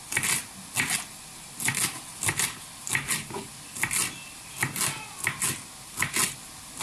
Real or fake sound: real